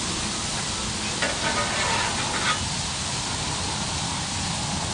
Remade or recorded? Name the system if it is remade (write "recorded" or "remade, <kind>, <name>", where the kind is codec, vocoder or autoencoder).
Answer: recorded